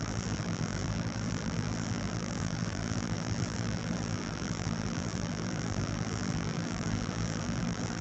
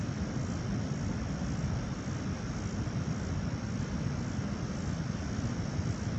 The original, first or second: second